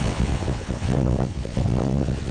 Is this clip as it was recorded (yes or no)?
no